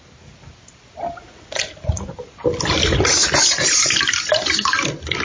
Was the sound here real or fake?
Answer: real